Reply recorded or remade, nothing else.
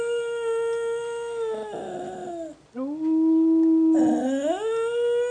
recorded